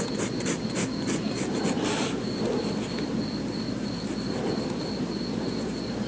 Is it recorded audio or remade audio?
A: recorded